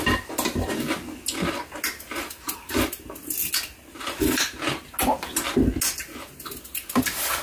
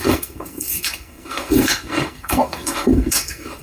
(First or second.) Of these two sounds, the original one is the first